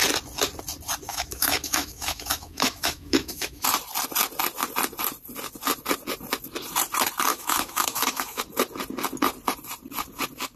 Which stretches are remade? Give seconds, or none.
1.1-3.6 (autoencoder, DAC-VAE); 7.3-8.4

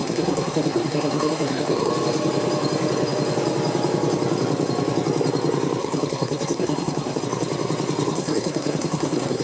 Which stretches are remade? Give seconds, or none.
0.0-1.9 (codec, SNAC); 5.8-7.2; 8.1-9.4

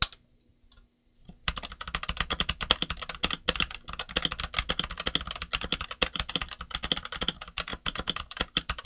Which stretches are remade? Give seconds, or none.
7.7-8.9 (vocoder, BigVGAN v2)

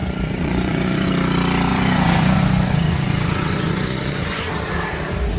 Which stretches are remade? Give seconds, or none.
0.0-1.1 (vocoder, Vocos); 1.7-4.5

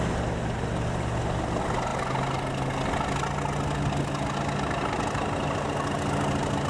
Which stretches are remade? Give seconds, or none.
none

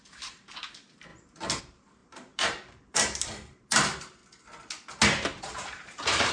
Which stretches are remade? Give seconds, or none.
0.0-1.1 (vocoder, BigVGAN v2); 1.6-4.2; 5.4-6.3

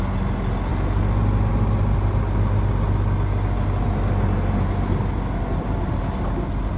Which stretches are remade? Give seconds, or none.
none